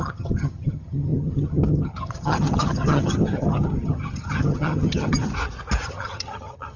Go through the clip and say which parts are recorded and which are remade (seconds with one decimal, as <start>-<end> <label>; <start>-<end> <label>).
0.0-5.3 remade; 5.3-5.9 recorded; 5.9-6.8 remade